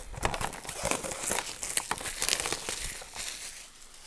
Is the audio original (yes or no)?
yes